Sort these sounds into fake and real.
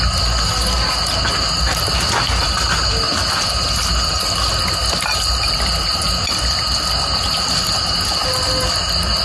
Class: real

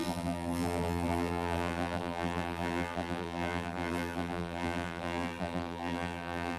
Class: fake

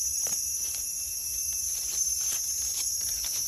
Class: fake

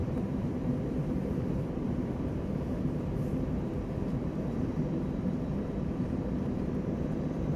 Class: fake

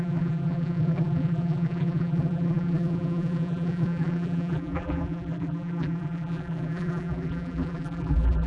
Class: fake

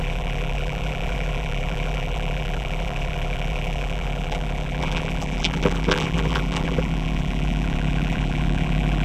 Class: fake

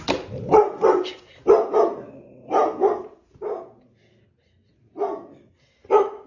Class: real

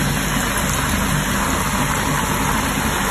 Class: real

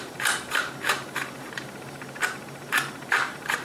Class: fake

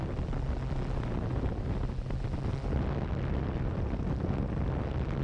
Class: real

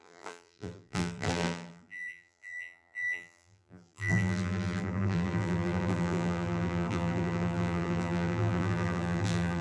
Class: fake